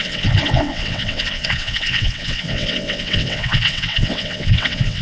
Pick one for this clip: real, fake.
fake